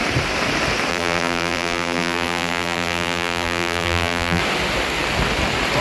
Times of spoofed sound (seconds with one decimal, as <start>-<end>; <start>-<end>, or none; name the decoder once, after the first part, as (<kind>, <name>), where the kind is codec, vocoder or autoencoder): 0.9-4.4 (vocoder, BigVGAN v2)